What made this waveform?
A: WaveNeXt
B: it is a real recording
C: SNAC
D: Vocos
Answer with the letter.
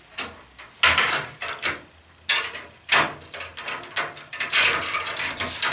B